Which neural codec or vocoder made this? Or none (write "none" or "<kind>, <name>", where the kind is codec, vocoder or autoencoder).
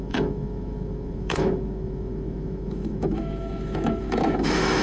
autoencoder, DAC-VAE